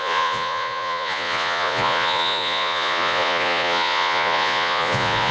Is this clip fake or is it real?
fake